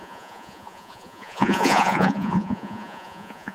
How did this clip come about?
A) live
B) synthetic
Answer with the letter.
B